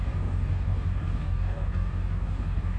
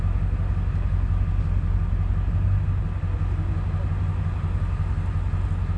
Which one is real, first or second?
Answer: second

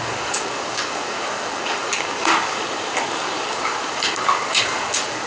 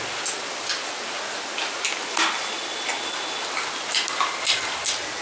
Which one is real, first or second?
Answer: second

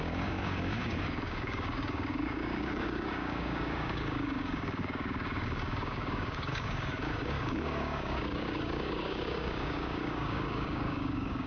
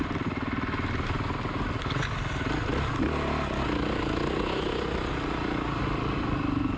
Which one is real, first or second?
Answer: second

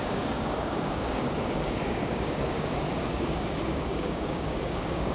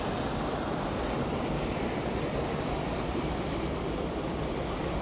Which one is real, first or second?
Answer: second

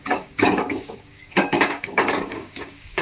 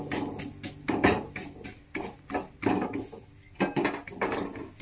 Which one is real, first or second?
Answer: second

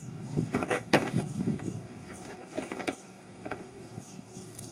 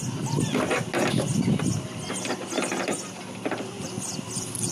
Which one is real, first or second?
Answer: second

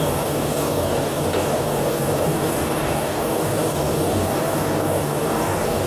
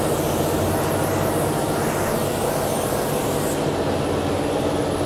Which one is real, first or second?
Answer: second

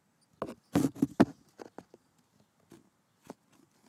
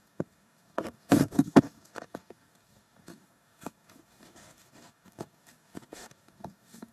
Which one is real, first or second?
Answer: first